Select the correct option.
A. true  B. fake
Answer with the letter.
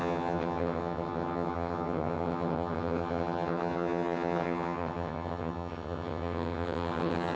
B